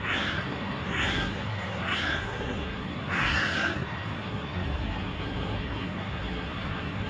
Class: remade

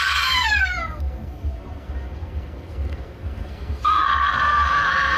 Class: remade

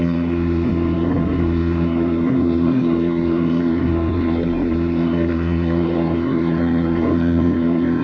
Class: remade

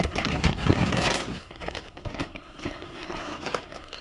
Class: remade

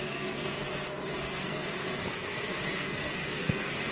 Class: remade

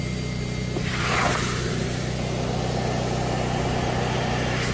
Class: recorded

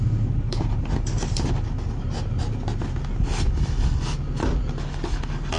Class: recorded